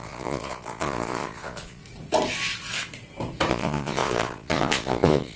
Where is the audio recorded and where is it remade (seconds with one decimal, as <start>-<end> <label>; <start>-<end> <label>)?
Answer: 0.0-1.8 remade; 1.8-3.5 recorded; 3.5-5.4 remade

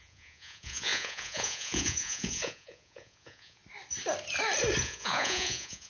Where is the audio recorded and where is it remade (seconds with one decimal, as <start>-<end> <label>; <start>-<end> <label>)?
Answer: 0.0-3.6 remade; 3.6-4.8 recorded; 4.8-5.9 remade

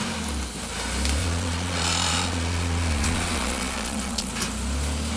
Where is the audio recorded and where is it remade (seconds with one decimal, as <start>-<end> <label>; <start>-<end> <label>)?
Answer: 0.0-1.2 recorded; 1.2-4.3 remade; 4.3-5.2 recorded

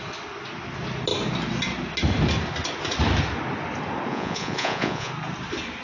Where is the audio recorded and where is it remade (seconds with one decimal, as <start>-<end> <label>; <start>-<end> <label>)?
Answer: 0.0-4.1 recorded; 4.1-5.1 remade; 5.1-5.8 recorded

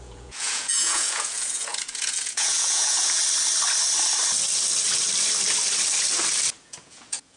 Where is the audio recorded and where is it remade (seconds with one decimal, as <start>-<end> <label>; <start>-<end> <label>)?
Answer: 0.0-3.2 remade; 3.2-6.6 recorded; 6.6-7.4 remade

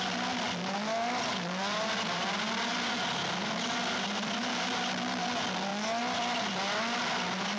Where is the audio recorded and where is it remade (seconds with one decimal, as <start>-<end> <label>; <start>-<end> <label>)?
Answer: 0.0-7.6 recorded